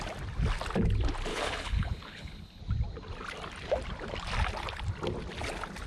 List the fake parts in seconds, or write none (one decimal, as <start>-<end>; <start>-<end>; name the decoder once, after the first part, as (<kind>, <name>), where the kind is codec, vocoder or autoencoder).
1.3-2.6 (codec, HILCodec)